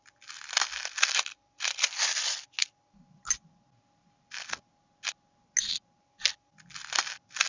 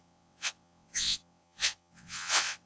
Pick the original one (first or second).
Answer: first